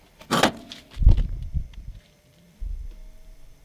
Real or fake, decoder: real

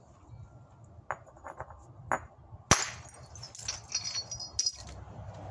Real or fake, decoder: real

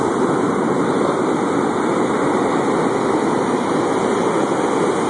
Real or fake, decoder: real